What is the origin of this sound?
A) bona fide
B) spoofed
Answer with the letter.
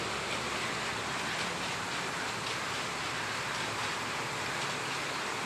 A